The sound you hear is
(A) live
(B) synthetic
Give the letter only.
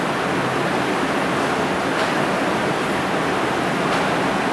A